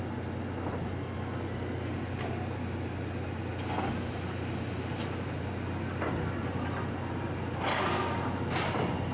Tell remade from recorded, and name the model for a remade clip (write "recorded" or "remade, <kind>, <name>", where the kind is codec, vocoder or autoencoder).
recorded